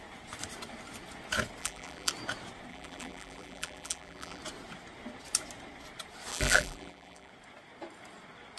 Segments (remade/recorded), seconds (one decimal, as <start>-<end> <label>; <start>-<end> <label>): 0.0-1.6 recorded; 1.6-2.1 remade; 2.1-2.7 recorded; 2.7-4.4 remade; 4.4-6.3 recorded; 6.3-7.3 remade; 7.3-8.6 recorded